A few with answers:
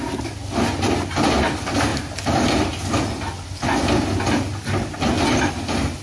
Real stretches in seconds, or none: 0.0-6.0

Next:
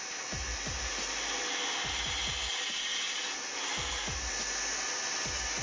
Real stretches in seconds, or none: 0.0-5.6

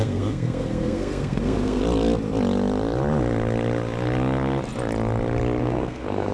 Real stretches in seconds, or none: 1.8-5.6

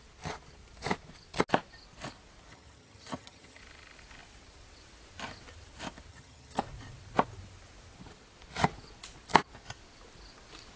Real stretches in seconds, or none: 0.0-2.5; 3.6-6.1; 6.6-10.8

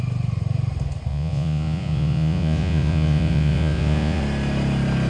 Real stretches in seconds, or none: 0.0-1.1; 4.2-5.1

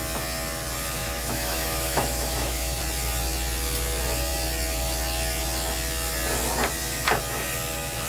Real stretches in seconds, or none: 0.0-1.0; 2.8-8.1